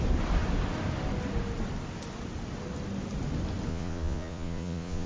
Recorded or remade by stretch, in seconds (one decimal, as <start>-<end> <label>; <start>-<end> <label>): 0.0-3.7 recorded; 3.7-5.1 remade